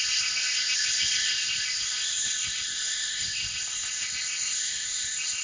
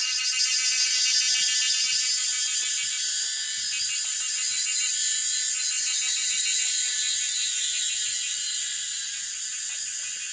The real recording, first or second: second